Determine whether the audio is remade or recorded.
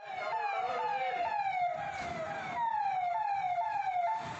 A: recorded